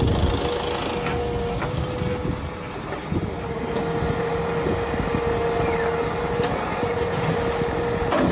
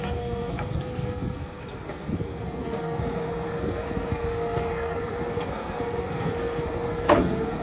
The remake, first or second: second